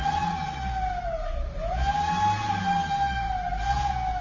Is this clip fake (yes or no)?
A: no